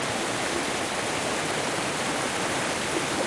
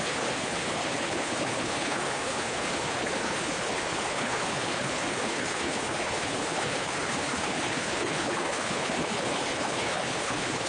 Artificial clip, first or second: second